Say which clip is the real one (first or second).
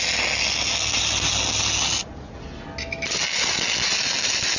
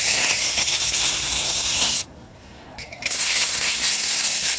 first